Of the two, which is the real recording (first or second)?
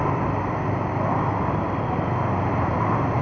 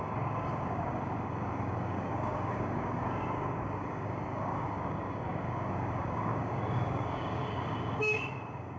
first